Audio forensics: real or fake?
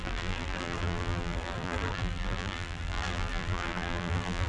fake